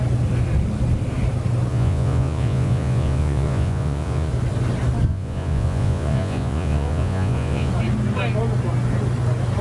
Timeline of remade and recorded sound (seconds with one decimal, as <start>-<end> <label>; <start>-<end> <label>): 0.0-1.7 recorded; 1.7-4.3 remade; 4.3-5.1 recorded; 5.1-7.7 remade; 7.7-9.6 recorded